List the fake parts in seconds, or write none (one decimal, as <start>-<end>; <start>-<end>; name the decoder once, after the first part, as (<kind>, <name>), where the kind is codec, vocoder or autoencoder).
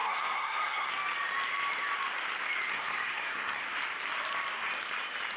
0.0-0.9 (codec, SNAC); 2.7-3.6